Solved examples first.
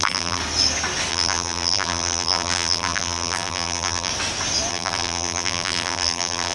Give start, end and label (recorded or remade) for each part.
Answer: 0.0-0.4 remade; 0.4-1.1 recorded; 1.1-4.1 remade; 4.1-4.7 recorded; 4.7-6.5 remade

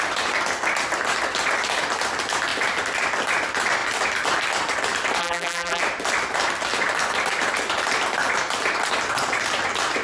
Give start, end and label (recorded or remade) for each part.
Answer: 0.0-5.2 recorded; 5.2-5.8 remade; 5.8-10.0 recorded

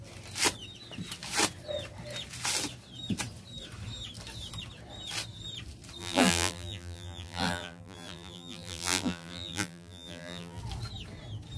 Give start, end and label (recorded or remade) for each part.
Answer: 0.0-6.0 recorded; 6.0-10.6 remade; 10.6-11.6 recorded